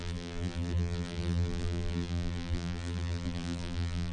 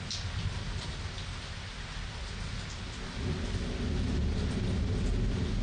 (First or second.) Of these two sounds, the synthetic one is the first